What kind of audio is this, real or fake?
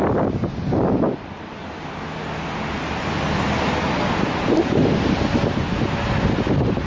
real